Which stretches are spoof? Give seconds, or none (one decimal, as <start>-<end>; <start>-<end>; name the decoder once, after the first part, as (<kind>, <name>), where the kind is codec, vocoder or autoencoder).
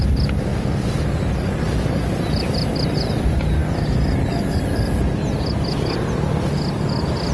none